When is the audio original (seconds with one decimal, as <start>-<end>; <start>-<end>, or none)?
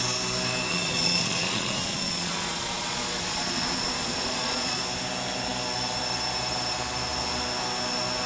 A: 0.0-0.7; 4.8-8.3